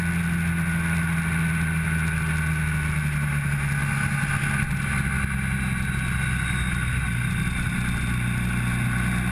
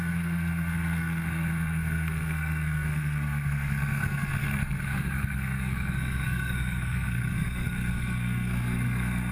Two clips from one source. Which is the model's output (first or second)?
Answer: second